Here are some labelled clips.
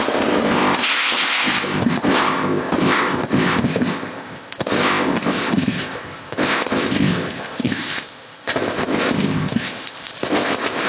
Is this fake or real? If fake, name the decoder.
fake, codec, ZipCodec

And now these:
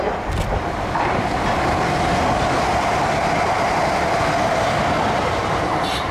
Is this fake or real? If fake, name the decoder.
real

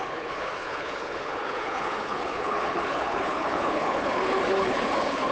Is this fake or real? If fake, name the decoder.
fake, codec, HILCodec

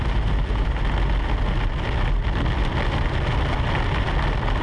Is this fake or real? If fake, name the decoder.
real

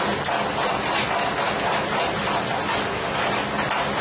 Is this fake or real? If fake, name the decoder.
real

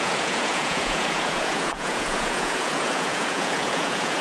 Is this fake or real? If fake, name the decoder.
fake, vocoder, Vocos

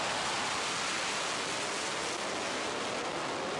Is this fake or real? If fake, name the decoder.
real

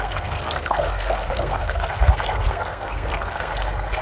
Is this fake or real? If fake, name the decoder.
fake, codec, SNAC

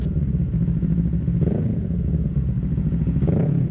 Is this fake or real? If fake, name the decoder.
fake, vocoder, Vocos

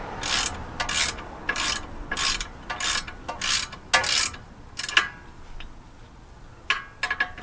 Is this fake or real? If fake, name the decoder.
real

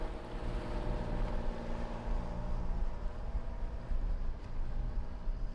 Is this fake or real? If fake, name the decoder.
real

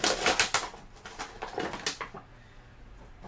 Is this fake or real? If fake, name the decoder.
real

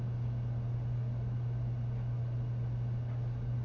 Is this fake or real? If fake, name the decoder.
real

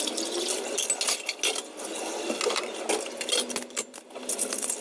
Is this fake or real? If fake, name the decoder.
real